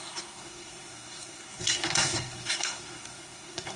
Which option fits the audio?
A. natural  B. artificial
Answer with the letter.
B